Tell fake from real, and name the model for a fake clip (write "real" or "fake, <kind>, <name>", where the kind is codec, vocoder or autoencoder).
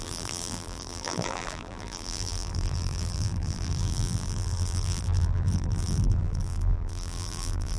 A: fake, vocoder, BigVGAN v2